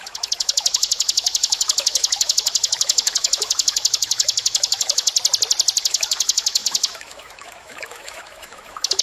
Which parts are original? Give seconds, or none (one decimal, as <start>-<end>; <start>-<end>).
5.1-5.8